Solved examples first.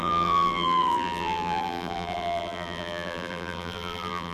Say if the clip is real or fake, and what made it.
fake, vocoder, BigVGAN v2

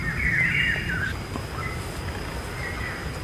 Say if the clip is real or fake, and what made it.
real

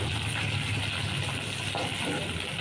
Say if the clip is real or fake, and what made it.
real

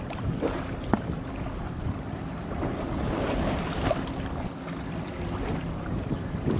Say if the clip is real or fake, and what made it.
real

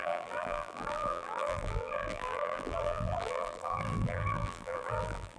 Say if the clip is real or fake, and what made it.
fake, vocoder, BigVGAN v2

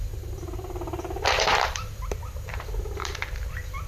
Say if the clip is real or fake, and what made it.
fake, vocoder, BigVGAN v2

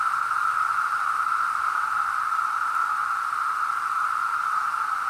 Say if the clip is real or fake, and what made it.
real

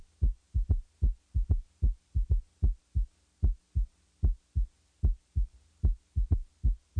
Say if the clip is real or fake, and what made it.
real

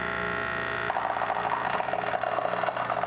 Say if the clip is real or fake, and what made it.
real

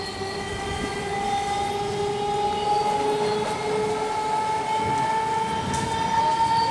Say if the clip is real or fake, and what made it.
real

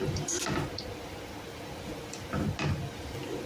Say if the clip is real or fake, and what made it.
real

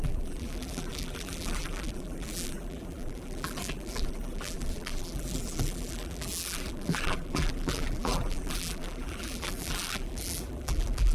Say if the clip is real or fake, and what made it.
fake, vocoder, BigVGAN v2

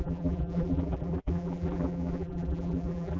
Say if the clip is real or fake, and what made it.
fake, vocoder, BigVGAN v2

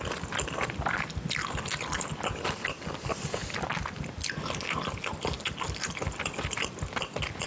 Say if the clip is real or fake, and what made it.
real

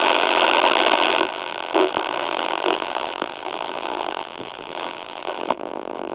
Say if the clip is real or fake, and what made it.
fake, vocoder, BigVGAN v2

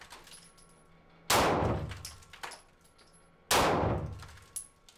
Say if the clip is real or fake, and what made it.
real